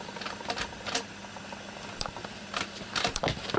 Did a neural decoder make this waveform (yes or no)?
no